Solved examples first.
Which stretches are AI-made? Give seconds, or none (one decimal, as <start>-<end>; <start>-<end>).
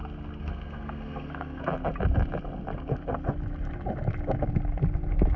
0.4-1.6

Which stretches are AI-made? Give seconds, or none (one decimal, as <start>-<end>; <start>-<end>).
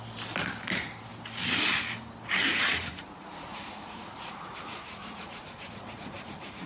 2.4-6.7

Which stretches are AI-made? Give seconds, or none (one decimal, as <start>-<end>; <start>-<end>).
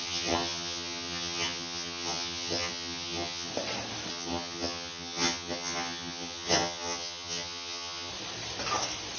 0.0-3.5; 4.1-8.1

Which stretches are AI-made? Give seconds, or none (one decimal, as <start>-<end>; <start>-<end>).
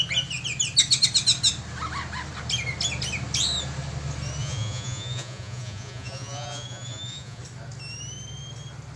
4.4-7.4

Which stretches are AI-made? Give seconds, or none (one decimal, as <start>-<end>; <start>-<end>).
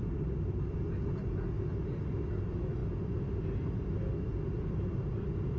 none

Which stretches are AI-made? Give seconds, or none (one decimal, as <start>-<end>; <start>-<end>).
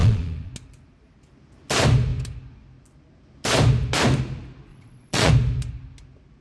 0.0-0.5; 4.7-5.3